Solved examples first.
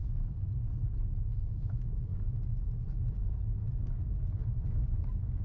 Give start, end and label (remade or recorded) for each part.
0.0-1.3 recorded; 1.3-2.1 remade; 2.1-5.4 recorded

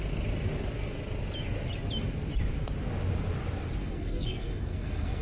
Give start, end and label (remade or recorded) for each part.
0.0-3.8 recorded; 3.8-5.2 remade

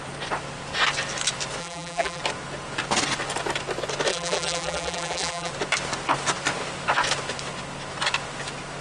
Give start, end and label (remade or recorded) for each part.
0.0-1.6 recorded; 1.6-2.2 remade; 2.2-4.1 recorded; 4.1-5.5 remade; 5.5-8.8 recorded

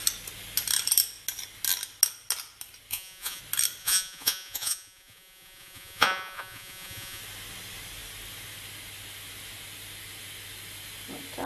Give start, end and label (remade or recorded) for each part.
0.0-2.9 recorded; 2.9-3.4 remade; 3.4-3.8 recorded; 3.8-7.2 remade; 7.2-11.5 recorded

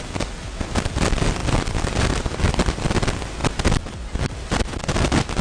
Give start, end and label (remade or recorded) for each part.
0.0-5.4 recorded

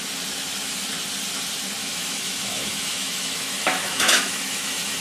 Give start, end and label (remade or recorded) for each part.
0.0-1.8 recorded; 1.8-5.0 remade

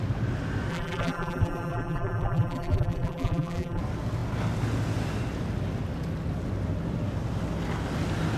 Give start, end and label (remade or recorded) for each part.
0.0-0.7 recorded; 0.7-3.8 remade; 3.8-8.4 recorded